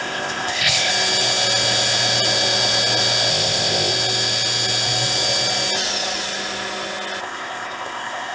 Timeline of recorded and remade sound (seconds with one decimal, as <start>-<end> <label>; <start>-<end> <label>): 0.0-0.9 remade; 0.9-3.3 recorded; 3.3-3.9 remade; 3.9-7.2 recorded; 7.2-8.3 remade